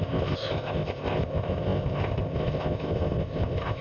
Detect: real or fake fake